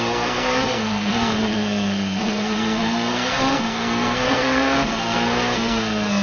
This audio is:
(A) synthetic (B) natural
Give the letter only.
A